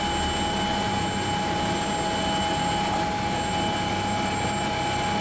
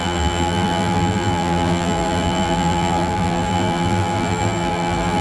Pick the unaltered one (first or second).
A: first